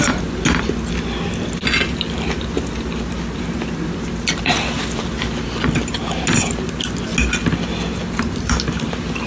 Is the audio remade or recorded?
recorded